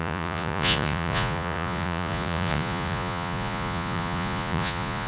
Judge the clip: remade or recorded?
remade